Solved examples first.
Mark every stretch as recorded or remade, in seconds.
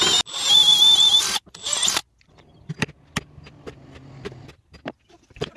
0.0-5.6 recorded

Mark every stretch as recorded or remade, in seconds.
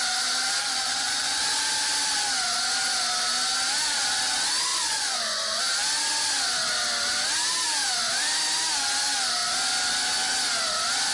0.0-0.6 recorded; 0.6-1.4 remade; 1.4-4.7 recorded; 4.7-5.6 remade; 5.6-11.1 recorded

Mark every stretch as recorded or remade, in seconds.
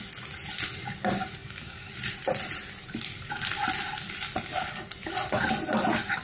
0.0-1.4 recorded; 1.4-1.9 remade; 1.9-6.2 recorded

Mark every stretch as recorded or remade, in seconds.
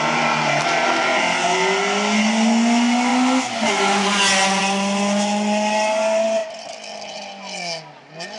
0.0-8.4 recorded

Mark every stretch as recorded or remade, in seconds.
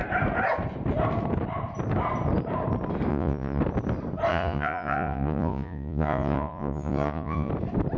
0.0-3.1 recorded; 3.1-3.6 remade; 3.6-4.3 recorded; 4.3-7.5 remade; 7.5-8.0 recorded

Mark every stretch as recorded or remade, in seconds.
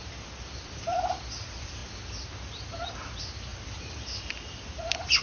0.0-1.8 remade; 1.8-2.9 recorded; 2.9-5.2 remade